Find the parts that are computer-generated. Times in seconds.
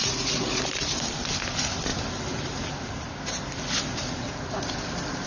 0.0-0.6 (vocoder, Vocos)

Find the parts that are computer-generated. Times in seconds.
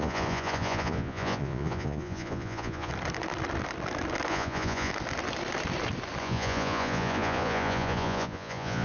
0.0-2.9 (vocoder, Vocos); 4.3-4.9; 6.2-8.8